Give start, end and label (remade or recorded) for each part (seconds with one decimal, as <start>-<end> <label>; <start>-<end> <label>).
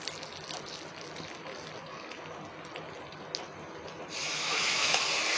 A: 0.0-4.2 recorded; 4.2-5.0 remade; 5.0-5.4 recorded